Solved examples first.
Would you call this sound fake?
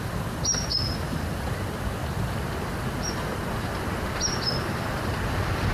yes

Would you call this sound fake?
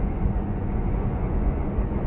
yes